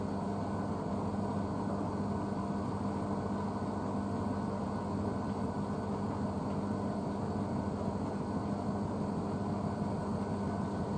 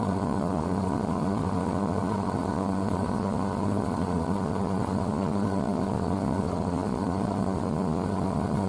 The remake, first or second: second